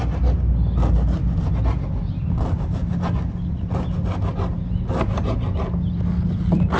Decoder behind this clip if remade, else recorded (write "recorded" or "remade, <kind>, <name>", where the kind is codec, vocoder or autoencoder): recorded